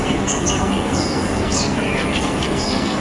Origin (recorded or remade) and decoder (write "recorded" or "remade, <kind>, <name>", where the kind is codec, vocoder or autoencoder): remade, codec, SNAC